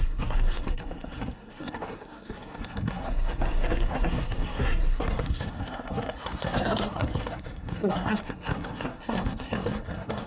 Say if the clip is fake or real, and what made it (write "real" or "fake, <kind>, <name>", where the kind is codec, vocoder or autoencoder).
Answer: fake, codec, SNAC